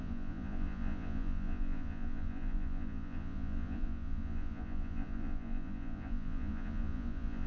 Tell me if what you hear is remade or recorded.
remade